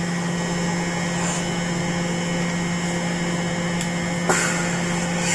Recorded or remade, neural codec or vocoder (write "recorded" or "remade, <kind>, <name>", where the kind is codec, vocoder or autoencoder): recorded